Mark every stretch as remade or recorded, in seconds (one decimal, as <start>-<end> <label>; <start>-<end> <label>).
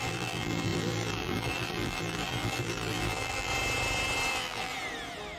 0.0-3.5 remade; 3.5-4.3 recorded; 4.3-4.7 remade; 4.7-5.4 recorded